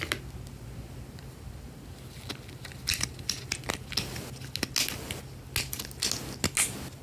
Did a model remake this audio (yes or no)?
no